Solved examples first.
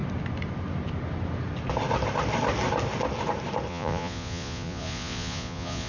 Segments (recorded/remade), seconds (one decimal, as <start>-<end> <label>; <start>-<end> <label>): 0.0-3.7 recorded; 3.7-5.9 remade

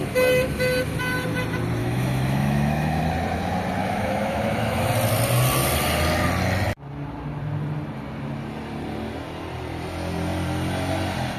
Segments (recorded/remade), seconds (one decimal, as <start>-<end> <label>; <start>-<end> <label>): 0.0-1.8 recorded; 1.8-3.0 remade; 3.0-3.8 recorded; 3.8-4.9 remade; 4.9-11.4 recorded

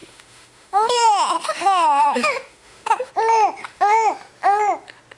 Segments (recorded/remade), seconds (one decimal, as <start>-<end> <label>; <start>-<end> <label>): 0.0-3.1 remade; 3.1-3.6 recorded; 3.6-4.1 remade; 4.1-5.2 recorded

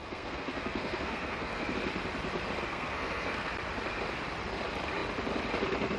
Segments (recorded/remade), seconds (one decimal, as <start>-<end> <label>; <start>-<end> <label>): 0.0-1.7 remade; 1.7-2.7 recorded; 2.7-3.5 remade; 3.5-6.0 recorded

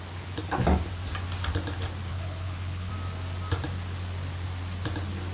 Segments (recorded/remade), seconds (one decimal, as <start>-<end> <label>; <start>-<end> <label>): 0.0-2.1 recorded; 2.1-2.9 remade; 2.9-5.3 recorded

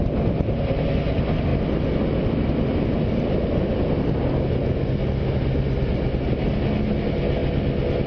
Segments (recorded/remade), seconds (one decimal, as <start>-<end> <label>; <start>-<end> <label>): 0.0-8.1 recorded